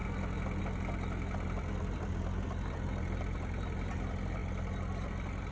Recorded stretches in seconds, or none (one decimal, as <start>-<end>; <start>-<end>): 0.0-5.5